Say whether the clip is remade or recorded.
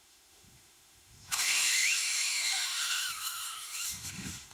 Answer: remade